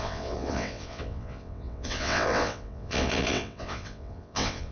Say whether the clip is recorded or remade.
remade